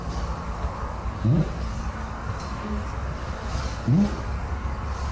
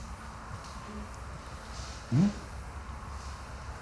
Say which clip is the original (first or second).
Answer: second